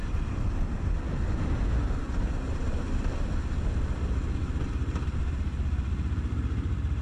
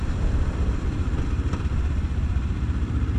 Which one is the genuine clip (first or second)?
first